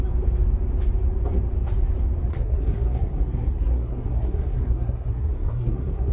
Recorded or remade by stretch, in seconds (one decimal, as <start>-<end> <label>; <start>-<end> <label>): 0.0-2.3 recorded; 2.3-6.1 remade